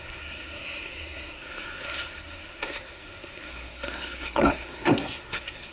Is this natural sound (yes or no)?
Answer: no